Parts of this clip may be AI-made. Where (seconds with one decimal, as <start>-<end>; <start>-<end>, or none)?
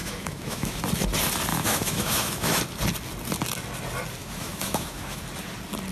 0.0-0.8; 1.5-2.6; 4.2-5.2